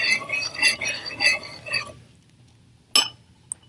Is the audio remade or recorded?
recorded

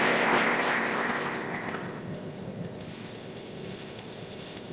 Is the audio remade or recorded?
remade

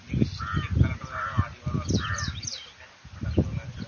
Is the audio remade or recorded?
recorded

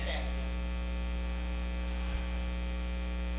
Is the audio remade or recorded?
recorded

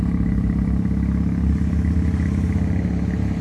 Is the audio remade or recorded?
recorded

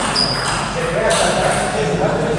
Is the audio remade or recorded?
recorded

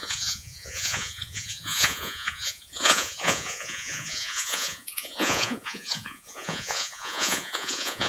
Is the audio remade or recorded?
remade